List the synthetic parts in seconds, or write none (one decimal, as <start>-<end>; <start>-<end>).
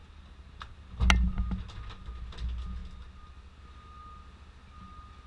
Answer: none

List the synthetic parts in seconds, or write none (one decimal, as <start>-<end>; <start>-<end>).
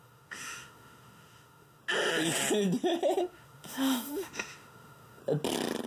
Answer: 0.0-1.8; 3.2-5.2